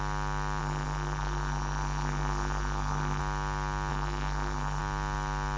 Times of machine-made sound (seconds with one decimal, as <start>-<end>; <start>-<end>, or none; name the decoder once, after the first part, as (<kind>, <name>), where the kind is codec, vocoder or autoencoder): 0.6-3.2 (codec, SNAC); 3.9-4.8